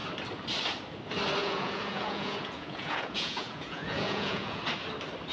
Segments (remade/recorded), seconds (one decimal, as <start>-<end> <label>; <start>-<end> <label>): 0.0-1.4 recorded; 1.4-4.6 remade; 4.6-5.3 recorded